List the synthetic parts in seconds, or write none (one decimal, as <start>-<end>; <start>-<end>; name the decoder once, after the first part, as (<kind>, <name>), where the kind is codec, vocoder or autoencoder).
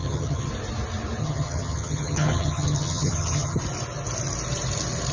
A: 0.0-0.5 (vocoder, HiFi-GAN); 1.2-3.6